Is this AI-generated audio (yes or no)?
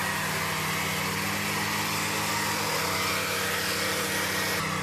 no